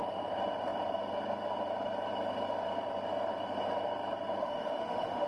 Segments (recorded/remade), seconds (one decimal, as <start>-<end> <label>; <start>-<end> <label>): 0.0-4.4 recorded; 4.4-5.3 remade